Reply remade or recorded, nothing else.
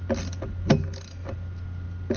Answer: recorded